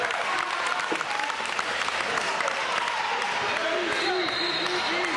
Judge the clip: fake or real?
real